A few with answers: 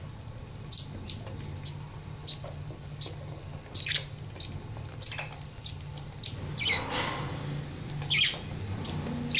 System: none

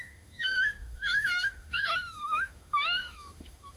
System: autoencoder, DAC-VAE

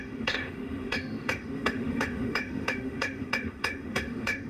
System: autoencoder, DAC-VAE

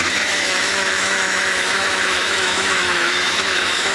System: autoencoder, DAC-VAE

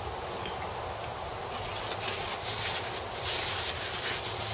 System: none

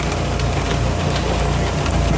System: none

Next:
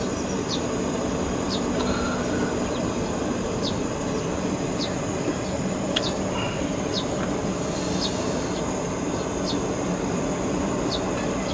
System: none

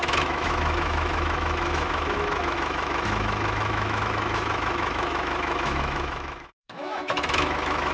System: autoencoder, DAC-VAE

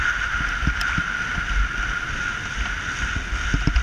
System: none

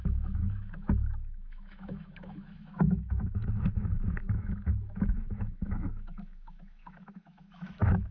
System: autoencoder, DAC-VAE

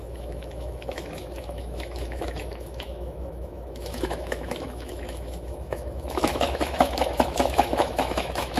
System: autoencoder, DAC-VAE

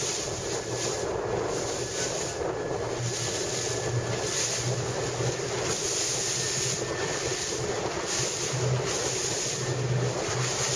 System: none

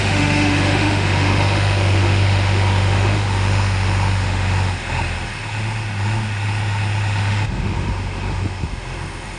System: autoencoder, DAC-VAE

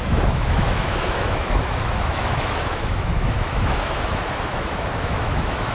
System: autoencoder, DAC-VAE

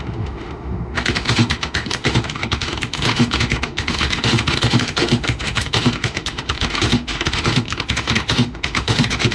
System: autoencoder, DAC-VAE